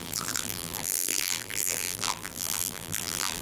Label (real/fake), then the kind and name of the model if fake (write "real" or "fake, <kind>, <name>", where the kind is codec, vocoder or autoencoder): fake, vocoder, BigVGAN v2